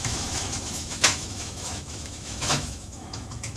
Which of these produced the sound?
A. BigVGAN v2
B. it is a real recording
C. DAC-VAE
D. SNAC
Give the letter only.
C